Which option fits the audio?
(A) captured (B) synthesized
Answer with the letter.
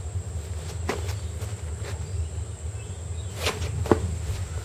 A